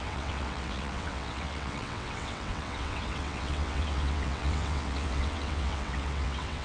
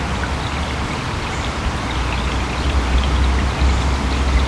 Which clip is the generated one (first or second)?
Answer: first